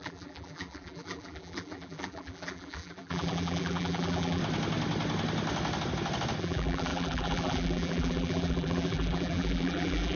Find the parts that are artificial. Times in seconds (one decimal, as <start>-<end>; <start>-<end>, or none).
0.0-4.4; 6.4-10.2